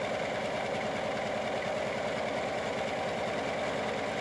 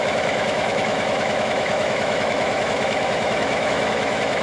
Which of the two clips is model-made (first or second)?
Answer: second